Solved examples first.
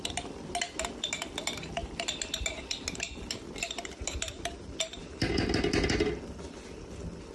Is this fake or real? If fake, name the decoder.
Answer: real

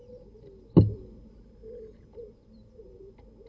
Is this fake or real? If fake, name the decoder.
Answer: real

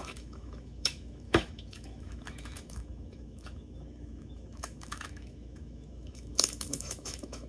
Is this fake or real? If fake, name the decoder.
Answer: fake, autoencoder, DAC-VAE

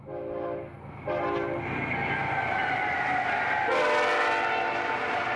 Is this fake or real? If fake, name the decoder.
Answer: real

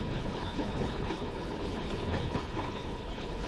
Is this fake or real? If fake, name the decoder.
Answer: fake, codec, HILCodec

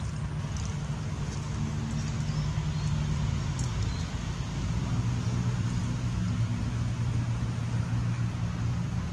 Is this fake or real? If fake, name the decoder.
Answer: real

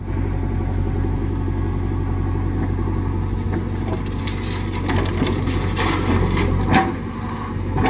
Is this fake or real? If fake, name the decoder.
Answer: real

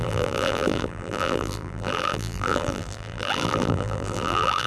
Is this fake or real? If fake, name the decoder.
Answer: fake, vocoder, BigVGAN v2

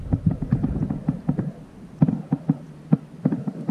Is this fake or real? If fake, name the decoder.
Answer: fake, vocoder, BigVGAN v2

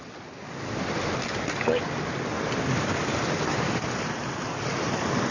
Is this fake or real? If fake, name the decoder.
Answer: real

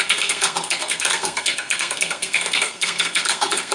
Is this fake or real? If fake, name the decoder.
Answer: fake, codec, SNAC